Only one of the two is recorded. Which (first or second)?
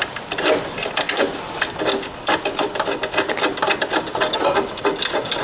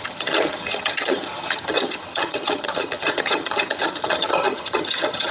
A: first